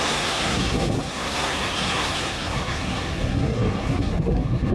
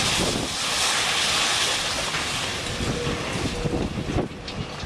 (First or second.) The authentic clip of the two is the second